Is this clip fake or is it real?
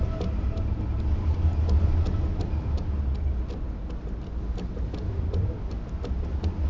real